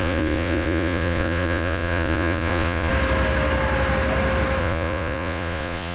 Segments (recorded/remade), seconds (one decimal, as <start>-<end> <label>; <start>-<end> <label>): 0.0-2.9 remade; 2.9-4.6 recorded; 4.6-5.9 remade